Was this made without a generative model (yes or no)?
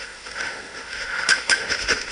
no